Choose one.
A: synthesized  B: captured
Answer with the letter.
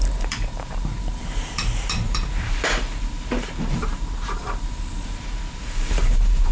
A